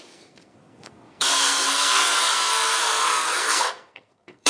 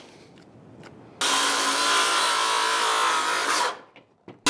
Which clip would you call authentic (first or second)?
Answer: second